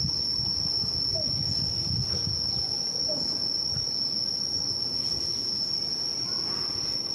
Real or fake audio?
real